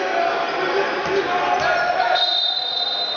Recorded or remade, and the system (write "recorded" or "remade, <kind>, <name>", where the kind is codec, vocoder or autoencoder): recorded